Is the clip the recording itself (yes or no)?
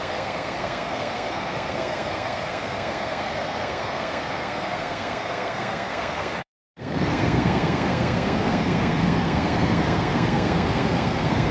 no